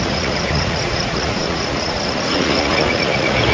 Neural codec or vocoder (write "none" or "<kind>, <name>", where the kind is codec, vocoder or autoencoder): vocoder, Vocos